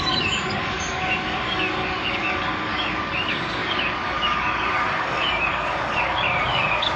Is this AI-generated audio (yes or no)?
yes